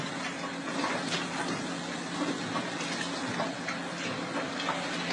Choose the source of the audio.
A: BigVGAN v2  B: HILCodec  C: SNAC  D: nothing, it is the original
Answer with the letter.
D